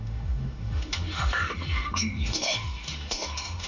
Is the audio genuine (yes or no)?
no